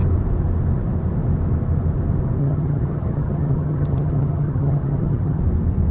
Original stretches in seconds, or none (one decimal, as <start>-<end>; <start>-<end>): 0.0-2.4; 5.4-5.9

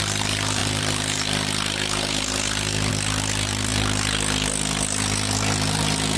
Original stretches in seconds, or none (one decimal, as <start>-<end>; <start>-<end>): 3.7-6.2